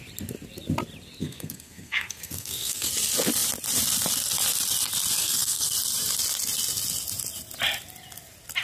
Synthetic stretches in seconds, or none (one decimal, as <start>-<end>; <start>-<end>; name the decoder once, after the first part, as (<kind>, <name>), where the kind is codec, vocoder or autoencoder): 1.2-2.9 (codec, SNAC); 5.2-5.7